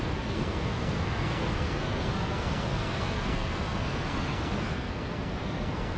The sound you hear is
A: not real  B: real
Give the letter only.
A